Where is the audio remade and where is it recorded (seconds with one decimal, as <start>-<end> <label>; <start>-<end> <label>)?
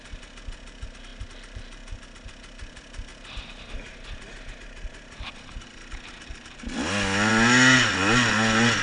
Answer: 0.0-8.8 recorded